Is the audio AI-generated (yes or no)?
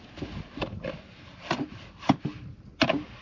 no